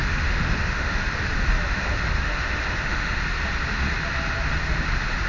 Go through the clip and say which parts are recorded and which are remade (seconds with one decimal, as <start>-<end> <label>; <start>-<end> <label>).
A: 0.0-1.0 remade; 1.0-1.8 recorded; 1.8-3.2 remade; 3.2-5.3 recorded

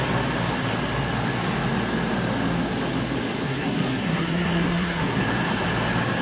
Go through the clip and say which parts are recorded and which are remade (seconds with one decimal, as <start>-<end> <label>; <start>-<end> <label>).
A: 0.0-3.4 recorded; 3.4-5.2 remade; 5.2-6.2 recorded

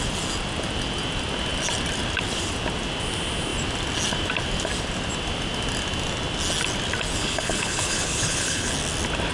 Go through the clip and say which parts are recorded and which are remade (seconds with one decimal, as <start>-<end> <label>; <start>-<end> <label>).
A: 0.0-7.2 recorded; 7.2-8.7 remade; 8.7-9.3 recorded

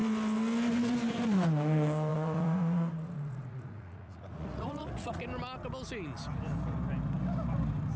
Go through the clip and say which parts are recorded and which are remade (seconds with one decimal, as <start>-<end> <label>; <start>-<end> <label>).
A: 0.0-2.1 recorded; 2.1-5.2 remade; 5.2-8.0 recorded

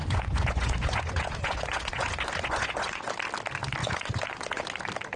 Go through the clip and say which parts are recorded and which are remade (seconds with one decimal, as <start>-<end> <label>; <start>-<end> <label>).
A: 0.0-3.1 remade; 3.1-3.8 recorded; 3.8-4.6 remade; 4.6-5.2 recorded